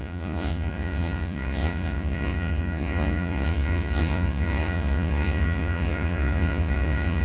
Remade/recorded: remade